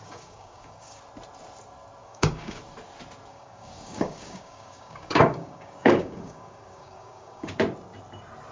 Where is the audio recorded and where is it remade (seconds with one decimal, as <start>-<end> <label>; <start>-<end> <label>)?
0.0-1.0 remade; 1.0-2.0 recorded; 2.0-2.6 remade; 2.6-3.3 recorded; 3.3-7.5 remade; 7.5-8.5 recorded